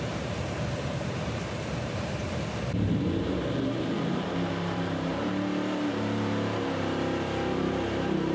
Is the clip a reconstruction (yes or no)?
yes